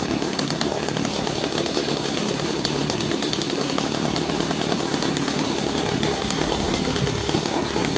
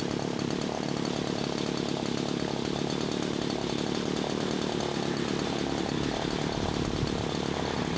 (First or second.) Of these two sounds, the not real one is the first